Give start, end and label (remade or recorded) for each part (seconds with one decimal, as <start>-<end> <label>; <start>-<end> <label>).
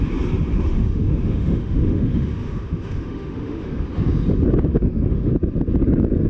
0.0-0.5 recorded; 0.5-3.8 remade; 3.8-4.7 recorded; 4.7-5.3 remade; 5.3-6.3 recorded